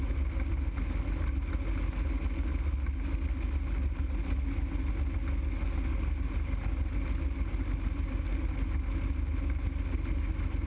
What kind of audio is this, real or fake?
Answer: real